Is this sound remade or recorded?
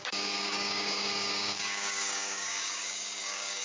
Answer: remade